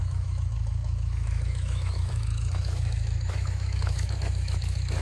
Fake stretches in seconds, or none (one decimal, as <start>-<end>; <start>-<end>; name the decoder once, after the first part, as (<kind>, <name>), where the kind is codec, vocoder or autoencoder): 0.0-5.0 (autoencoder, DAC-VAE)